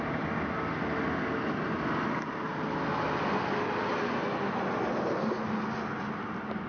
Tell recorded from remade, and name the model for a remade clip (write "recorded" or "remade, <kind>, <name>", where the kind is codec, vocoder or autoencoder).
recorded